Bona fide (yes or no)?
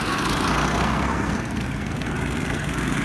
no